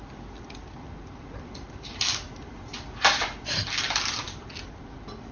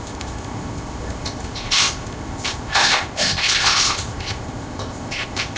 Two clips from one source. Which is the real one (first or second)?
first